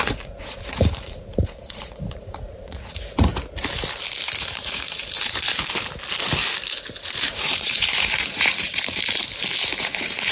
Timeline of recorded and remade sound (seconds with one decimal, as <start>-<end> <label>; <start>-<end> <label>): 0.0-3.3 remade; 3.3-4.4 recorded; 4.4-5.0 remade; 5.0-7.3 recorded; 7.3-9.0 remade; 9.0-9.8 recorded; 9.8-10.3 remade